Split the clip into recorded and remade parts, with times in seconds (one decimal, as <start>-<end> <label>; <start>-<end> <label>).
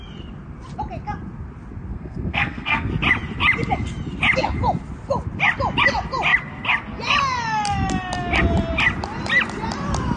0.0-1.9 recorded; 1.9-2.9 remade; 2.9-10.2 recorded